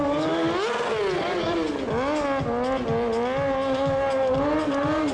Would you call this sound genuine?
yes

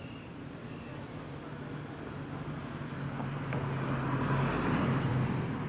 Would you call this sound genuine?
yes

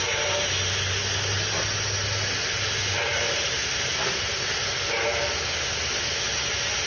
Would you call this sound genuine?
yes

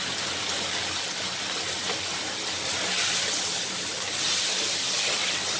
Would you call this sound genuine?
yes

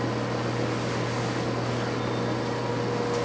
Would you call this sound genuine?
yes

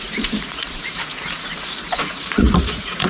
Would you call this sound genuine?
no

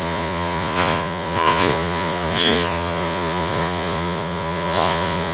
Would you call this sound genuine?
no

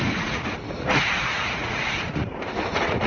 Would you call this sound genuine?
no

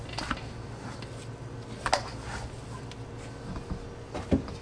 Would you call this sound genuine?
yes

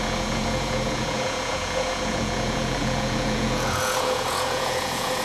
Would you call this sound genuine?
no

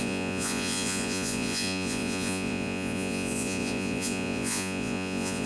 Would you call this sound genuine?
no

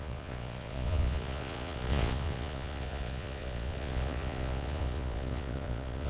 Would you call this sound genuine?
no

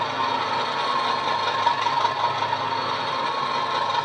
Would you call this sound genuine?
yes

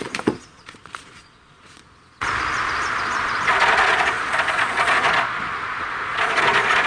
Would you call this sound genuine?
no